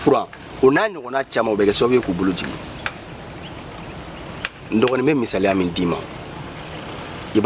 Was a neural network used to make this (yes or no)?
no